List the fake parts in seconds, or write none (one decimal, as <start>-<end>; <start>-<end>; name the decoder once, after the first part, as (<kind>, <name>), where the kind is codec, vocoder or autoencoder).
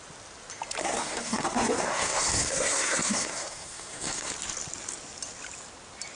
0.8-4.3 (codec, SNAC)